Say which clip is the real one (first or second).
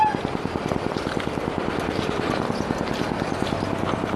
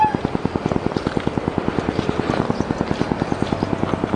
second